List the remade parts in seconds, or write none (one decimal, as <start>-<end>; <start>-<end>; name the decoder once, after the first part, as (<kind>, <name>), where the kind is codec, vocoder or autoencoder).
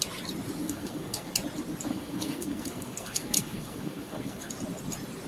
0.6-1.3 (codec, SNAC); 1.9-4.5